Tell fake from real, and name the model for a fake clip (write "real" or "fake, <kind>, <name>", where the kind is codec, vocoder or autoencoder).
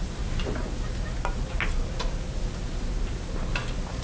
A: real